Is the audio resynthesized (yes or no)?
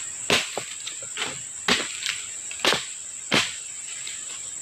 no